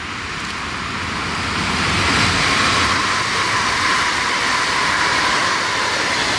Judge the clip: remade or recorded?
recorded